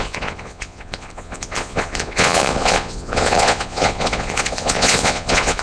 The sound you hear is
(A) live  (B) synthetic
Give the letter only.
B